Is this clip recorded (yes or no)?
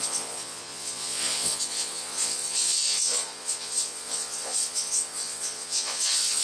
no